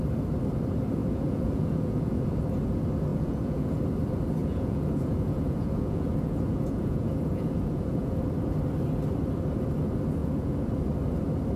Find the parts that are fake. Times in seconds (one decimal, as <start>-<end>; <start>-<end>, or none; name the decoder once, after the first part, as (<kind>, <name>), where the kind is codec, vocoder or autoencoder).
1.0-2.4 (vocoder, Vocos); 3.1-3.8; 4.4-8.2; 10.2-10.7